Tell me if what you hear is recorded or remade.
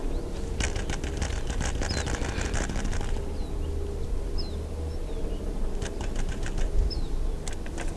recorded